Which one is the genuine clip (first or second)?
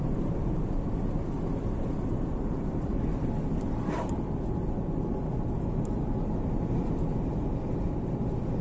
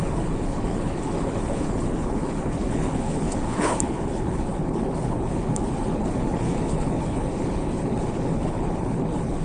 first